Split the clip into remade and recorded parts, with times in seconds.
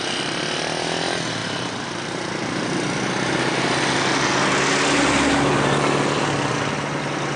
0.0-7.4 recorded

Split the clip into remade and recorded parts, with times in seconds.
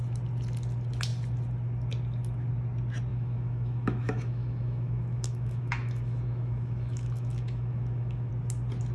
0.0-3.1 recorded; 3.1-8.3 remade; 8.3-8.9 recorded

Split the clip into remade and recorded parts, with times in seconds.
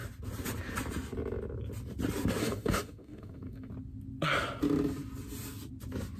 0.0-2.4 recorded; 2.4-3.7 remade; 3.7-6.2 recorded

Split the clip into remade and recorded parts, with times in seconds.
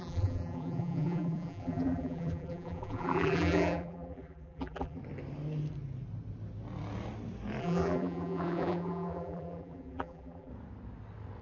0.0-5.0 remade; 5.0-7.6 recorded; 7.6-10.5 remade; 10.5-11.4 recorded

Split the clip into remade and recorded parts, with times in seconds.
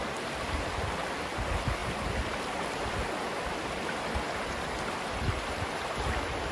0.0-6.5 recorded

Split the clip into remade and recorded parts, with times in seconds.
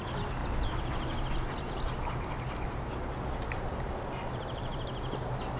0.0-0.4 remade; 0.4-3.8 recorded; 3.8-4.7 remade; 4.7-5.6 recorded